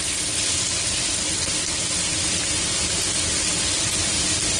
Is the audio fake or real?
real